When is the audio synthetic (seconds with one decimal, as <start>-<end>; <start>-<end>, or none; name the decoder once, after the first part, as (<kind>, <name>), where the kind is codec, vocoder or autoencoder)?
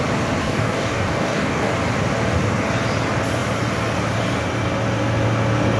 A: 0.4-1.7 (codec, DAC)